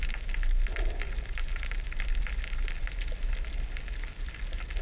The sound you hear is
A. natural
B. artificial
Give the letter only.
A